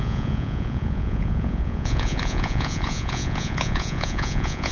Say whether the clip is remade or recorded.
remade